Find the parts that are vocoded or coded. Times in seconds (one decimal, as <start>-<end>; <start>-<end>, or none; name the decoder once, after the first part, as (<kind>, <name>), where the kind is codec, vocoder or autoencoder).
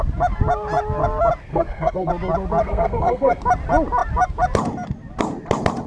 1.4-2.1 (codec, SNAC); 2.6-3.4